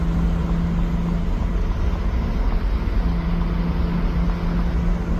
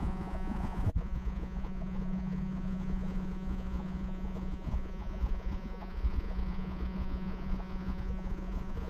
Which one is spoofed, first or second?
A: second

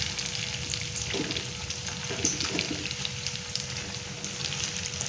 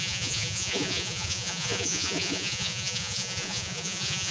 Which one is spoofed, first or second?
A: second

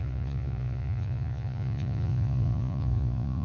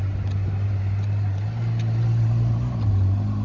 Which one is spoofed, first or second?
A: first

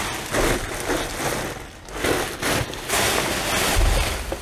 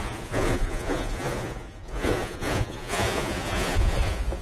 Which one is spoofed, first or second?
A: second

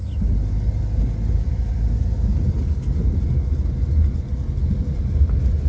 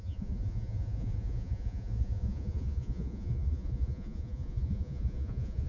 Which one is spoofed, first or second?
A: second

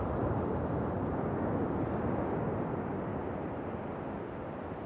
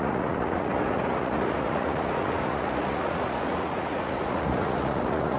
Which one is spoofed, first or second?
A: second